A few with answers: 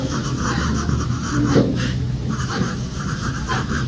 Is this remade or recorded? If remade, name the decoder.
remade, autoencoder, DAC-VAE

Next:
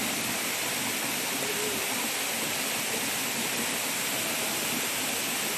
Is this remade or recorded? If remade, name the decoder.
recorded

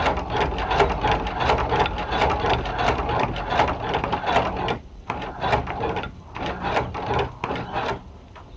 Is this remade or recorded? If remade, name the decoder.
recorded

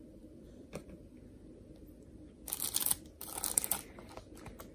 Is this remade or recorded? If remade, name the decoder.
recorded